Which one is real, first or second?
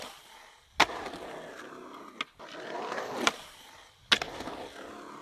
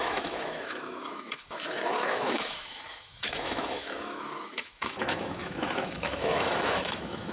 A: first